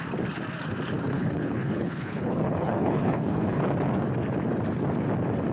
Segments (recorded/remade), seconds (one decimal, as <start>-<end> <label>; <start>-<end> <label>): 0.0-1.1 recorded; 1.1-3.6 remade; 3.6-5.5 recorded